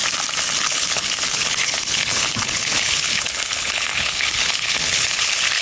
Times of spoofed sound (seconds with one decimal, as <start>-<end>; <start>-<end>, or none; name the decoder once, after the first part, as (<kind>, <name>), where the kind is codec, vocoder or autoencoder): 0.6-5.6 (codec, HILCodec)

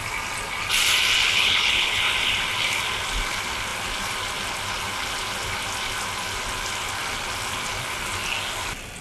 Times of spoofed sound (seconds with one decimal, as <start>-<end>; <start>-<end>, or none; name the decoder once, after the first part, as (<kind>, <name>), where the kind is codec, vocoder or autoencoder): 1.2-2.0 (codec, HILCodec)